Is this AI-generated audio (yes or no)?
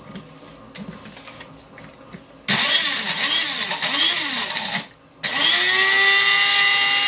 no